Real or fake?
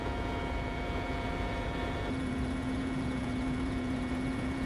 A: fake